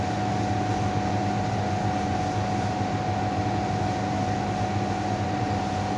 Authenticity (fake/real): real